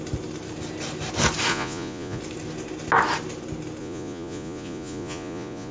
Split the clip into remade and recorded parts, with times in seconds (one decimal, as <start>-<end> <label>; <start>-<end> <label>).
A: 0.0-1.5 recorded; 1.5-2.2 remade; 2.2-3.8 recorded; 3.8-5.7 remade